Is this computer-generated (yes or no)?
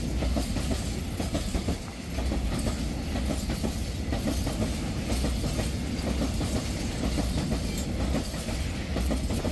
no